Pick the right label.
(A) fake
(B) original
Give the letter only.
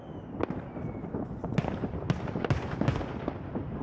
B